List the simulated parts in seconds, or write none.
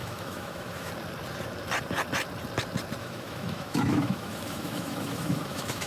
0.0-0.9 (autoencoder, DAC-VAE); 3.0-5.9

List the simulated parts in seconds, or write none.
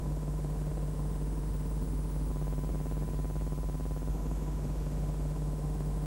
0.0-2.3 (autoencoder, DAC-VAE); 4.1-6.1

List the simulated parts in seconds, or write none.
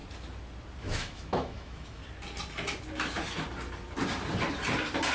0.8-2.0 (autoencoder, DAC-VAE)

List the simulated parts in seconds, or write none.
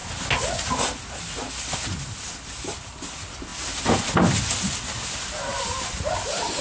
none